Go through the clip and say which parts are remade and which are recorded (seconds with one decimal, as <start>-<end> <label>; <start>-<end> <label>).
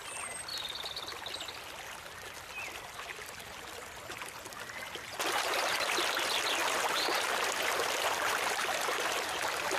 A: 0.0-9.8 recorded